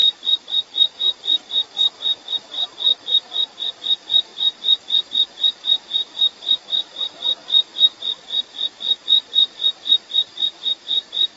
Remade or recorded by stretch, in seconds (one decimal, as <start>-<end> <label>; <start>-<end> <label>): 0.0-1.0 recorded; 1.0-2.9 remade; 2.9-3.7 recorded; 3.7-11.4 remade